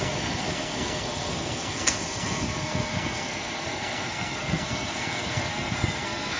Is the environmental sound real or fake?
fake